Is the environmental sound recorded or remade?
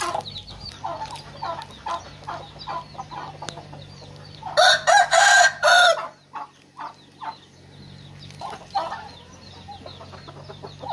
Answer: recorded